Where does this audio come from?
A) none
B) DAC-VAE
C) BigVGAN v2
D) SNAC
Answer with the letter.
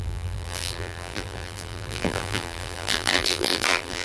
C